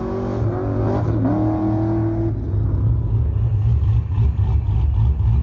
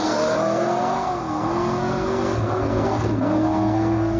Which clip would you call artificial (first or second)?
second